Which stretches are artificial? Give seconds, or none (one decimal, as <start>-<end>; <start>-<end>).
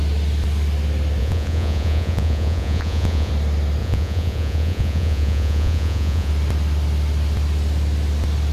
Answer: 1.2-3.3; 3.8-6.3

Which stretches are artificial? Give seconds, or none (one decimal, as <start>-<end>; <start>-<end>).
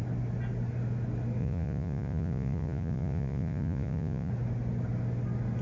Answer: 1.4-4.3